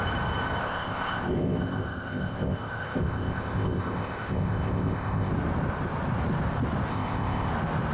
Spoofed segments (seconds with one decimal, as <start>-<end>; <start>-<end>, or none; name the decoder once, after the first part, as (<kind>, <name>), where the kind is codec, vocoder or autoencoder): 0.6-5.3 (codec, ZipCodec); 6.9-7.5